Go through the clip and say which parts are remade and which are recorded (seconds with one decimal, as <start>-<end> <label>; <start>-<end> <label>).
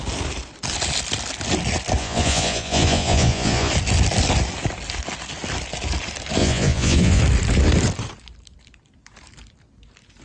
0.0-2.0 recorded; 2.0-3.7 remade; 3.7-6.4 recorded; 6.4-7.2 remade; 7.2-10.2 recorded